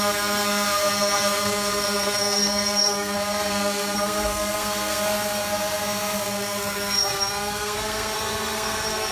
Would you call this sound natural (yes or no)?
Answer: no